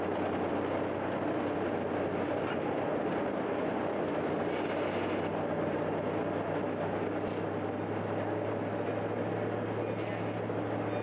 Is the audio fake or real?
real